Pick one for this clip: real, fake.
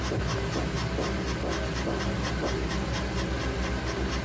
real